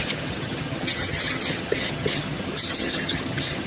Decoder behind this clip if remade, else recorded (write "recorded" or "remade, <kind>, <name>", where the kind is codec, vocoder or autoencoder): remade, vocoder, HiFi-GAN